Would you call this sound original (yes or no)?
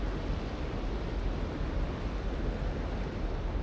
yes